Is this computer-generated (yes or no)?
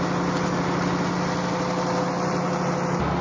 no